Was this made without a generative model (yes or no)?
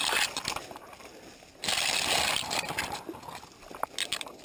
yes